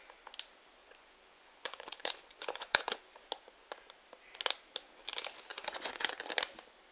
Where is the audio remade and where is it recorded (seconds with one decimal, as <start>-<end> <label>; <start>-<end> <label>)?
0.0-0.8 recorded; 0.8-3.2 remade; 3.2-5.5 recorded; 5.5-6.2 remade; 6.2-6.9 recorded